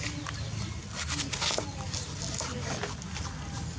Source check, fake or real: real